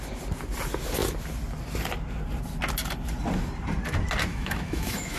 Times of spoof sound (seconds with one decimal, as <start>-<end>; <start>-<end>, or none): 4.3-5.2